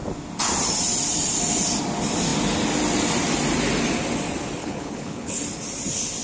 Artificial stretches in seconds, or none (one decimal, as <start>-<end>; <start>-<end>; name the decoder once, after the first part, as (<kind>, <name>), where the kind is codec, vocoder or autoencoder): 4.6-5.4 (codec, HILCodec)